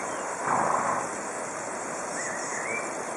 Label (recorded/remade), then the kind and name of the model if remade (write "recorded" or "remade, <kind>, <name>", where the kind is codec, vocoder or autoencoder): recorded